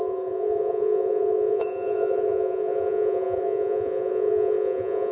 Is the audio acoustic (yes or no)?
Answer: no